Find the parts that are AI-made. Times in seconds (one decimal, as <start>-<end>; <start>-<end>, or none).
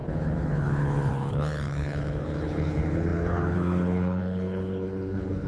0.0-5.5